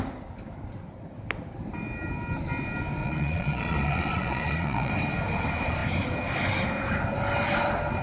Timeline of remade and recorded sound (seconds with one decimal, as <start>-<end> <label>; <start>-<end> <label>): 0.0-3.0 recorded; 3.0-4.9 remade; 4.9-8.0 recorded

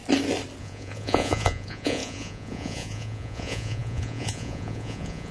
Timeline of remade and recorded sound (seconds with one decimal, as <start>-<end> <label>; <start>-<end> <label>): 0.0-0.6 recorded; 0.6-5.3 remade

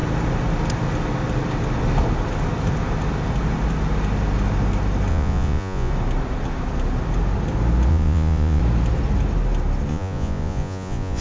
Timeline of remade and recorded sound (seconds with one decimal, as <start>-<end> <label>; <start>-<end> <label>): 0.0-5.1 recorded; 5.1-5.9 remade; 5.9-7.9 recorded; 7.9-8.6 remade; 8.6-9.9 recorded; 9.9-11.2 remade

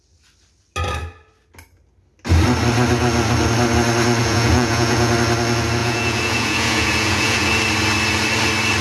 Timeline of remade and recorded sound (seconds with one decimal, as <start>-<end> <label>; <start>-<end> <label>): 0.0-4.2 recorded; 4.2-5.1 remade; 5.1-5.8 recorded; 5.8-7.5 remade; 7.5-8.8 recorded